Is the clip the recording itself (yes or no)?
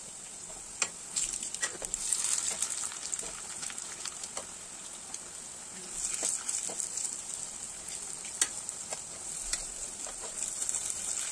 yes